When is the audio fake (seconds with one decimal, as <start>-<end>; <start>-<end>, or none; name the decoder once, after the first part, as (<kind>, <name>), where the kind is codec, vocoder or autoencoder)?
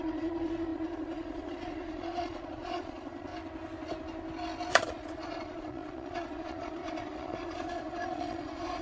0.0-3.3 (vocoder, Vocos); 4.7-8.8